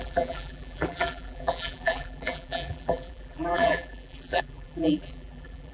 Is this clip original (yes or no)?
no